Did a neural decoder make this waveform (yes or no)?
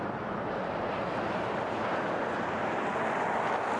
no